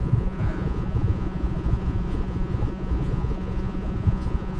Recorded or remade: remade